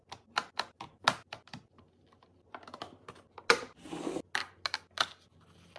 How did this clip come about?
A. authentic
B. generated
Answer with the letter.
A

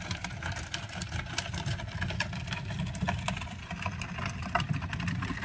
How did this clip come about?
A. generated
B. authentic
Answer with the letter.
B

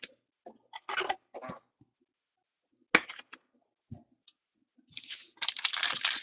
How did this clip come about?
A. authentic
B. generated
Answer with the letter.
A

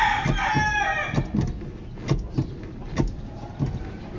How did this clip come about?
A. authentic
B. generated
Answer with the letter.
A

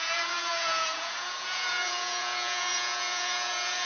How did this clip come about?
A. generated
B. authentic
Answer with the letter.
A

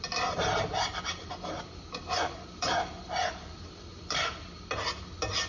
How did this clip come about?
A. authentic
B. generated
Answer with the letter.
A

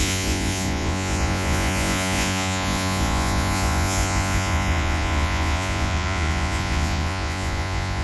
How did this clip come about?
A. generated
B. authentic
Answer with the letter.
A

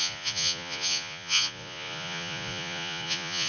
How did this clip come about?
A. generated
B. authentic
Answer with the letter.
A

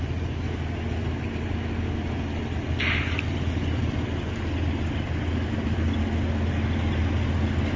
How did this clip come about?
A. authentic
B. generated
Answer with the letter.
A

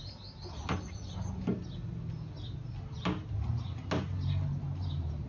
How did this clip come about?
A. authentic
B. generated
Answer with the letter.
A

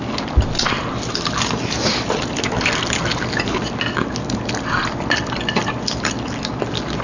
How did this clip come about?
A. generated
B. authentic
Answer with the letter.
B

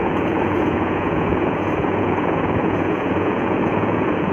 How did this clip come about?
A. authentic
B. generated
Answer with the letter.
B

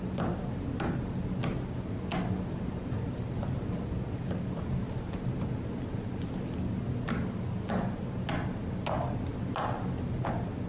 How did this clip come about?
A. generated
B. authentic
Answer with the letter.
B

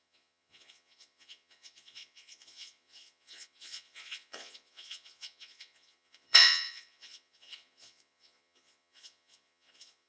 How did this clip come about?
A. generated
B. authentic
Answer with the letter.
A